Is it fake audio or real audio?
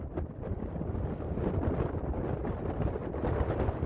real